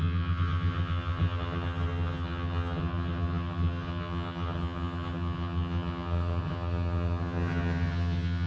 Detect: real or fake fake